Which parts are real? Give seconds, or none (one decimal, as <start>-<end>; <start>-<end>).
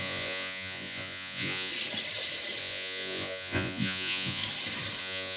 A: 1.7-2.6; 4.4-5.0